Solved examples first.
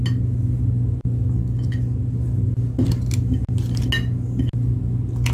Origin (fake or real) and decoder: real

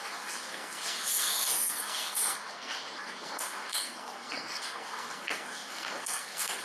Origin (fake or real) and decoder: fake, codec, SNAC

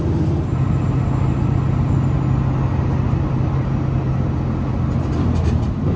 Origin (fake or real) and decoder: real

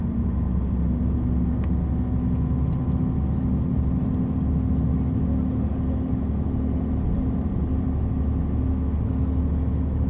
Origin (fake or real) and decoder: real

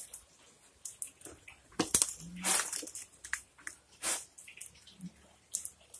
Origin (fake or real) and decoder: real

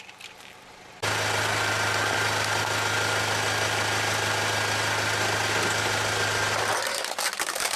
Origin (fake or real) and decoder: real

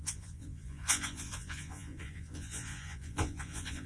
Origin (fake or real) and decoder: fake, vocoder, Vocos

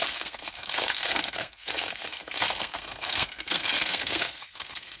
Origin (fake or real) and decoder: fake, codec, SNAC